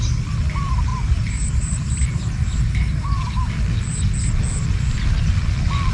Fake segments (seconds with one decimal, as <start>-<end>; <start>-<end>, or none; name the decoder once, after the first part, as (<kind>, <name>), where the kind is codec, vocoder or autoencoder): 0.9-3.5 (vocoder, BigVGAN v2)